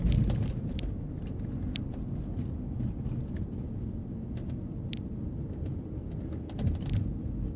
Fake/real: real